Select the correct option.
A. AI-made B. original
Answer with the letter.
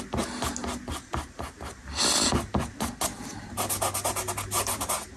B